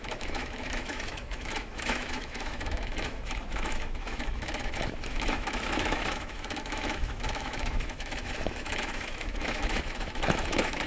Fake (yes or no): yes